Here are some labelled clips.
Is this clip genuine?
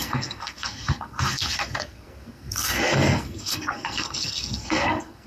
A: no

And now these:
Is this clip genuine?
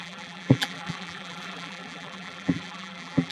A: no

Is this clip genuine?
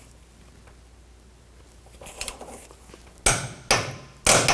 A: yes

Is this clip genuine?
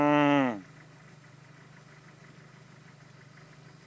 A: yes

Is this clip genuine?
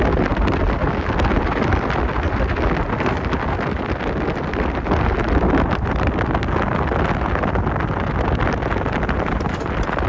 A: yes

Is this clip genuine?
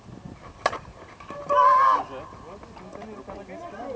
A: yes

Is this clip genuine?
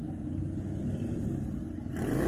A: yes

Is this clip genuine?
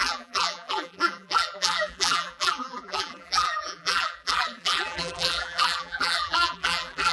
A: no